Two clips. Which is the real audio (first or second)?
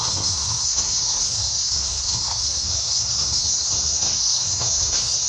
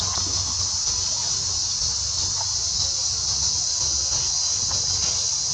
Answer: second